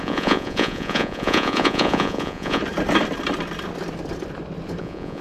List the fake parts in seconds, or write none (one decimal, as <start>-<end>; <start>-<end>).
0.0-2.6; 4.8-5.2